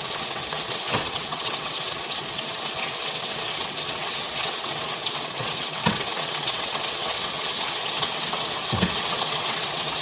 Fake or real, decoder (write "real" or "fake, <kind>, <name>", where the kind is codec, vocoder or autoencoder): fake, vocoder, WaveNeXt